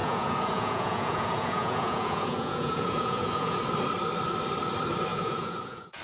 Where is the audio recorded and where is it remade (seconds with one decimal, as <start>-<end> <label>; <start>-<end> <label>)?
0.0-3.6 remade; 3.6-5.1 recorded; 5.1-6.0 remade